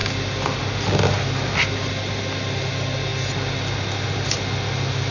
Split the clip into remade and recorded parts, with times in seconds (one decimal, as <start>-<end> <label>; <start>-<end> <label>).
0.0-5.1 recorded